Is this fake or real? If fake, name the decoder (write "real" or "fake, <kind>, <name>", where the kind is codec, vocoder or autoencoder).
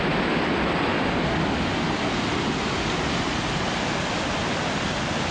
real